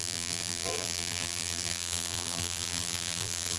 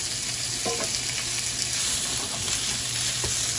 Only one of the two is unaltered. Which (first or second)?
second